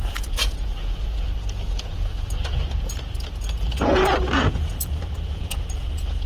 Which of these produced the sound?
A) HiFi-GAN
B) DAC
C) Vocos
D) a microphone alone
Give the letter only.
C